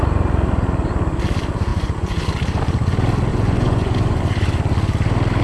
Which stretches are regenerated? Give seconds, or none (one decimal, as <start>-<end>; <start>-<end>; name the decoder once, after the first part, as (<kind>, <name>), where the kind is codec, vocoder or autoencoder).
1.7-2.2 (vocoder, Vocos); 3.3-4.2